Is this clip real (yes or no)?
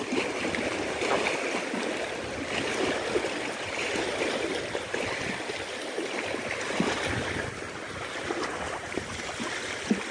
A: yes